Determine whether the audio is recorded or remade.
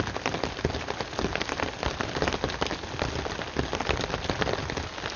recorded